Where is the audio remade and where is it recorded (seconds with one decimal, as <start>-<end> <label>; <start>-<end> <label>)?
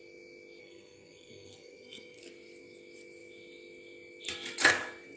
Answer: 0.0-0.6 recorded; 0.6-2.2 remade; 2.2-5.2 recorded